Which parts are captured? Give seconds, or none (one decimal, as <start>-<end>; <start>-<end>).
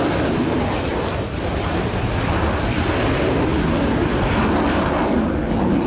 0.0-0.9; 1.7-3.5; 5.4-5.9